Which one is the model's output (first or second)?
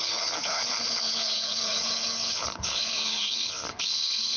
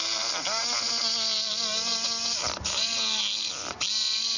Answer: first